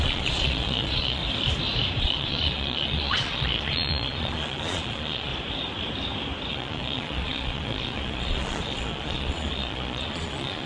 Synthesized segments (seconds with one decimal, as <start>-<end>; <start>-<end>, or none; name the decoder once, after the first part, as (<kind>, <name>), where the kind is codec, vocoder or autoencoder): 0.0-1.2 (vocoder, Vocos); 2.0-5.3; 6.5-10.7